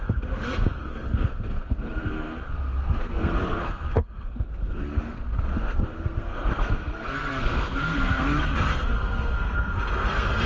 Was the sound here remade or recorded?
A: remade